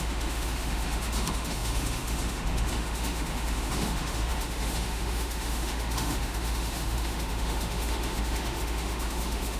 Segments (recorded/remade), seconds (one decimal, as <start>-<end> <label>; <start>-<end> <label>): 0.0-9.6 remade